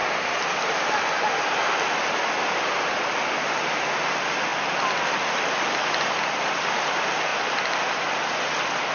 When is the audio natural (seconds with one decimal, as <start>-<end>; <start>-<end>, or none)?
0.0-8.9